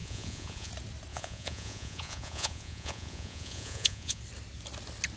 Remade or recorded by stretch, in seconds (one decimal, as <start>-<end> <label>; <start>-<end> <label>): 0.0-0.7 remade; 0.7-1.1 recorded; 1.1-4.2 remade; 4.2-5.2 recorded